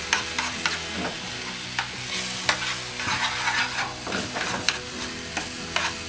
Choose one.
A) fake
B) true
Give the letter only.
B